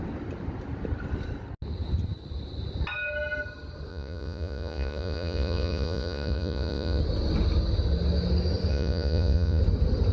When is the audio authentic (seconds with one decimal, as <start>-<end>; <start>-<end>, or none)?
0.0-3.9; 7.0-8.7; 9.6-10.1